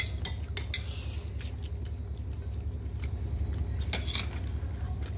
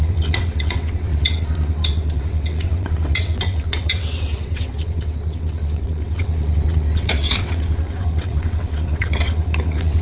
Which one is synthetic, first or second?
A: second